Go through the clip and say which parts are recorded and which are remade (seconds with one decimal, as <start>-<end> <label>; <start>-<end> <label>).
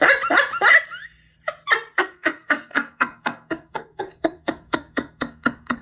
0.0-2.0 recorded; 2.0-5.8 remade